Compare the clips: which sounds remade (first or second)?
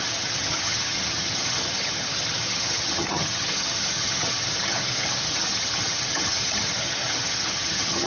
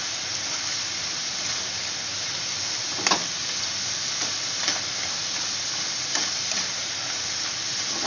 first